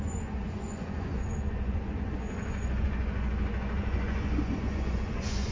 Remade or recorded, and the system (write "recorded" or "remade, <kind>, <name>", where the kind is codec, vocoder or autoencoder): remade, vocoder, Vocos